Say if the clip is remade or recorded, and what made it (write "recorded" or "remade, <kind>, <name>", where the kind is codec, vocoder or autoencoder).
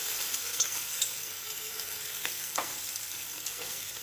remade, codec, SNAC